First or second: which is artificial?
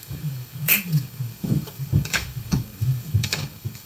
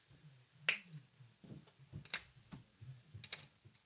first